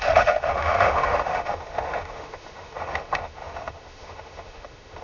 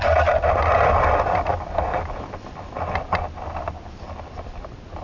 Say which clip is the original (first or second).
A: second